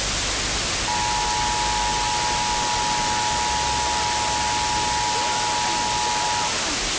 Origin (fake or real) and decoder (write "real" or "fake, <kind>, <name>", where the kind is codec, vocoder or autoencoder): real